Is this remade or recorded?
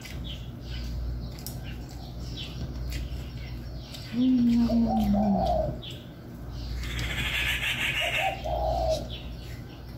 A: recorded